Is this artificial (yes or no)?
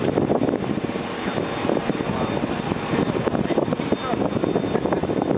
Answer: no